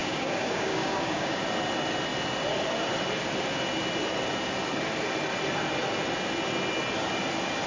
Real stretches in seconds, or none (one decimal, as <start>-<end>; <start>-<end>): 1.4-7.7